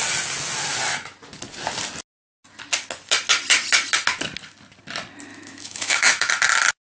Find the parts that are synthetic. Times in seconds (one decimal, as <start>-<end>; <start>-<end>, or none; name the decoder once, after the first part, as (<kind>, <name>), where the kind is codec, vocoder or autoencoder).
5.3-6.3 (autoencoder, DAC-VAE)